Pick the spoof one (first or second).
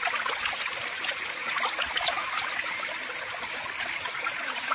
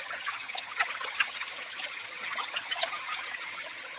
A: second